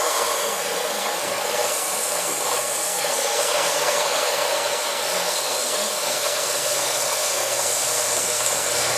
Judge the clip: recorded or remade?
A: remade